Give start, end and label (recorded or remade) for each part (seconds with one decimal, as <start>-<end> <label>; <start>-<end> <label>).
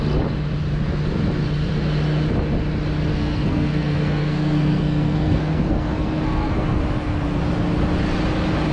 0.0-3.1 recorded; 3.1-6.8 remade; 6.8-8.7 recorded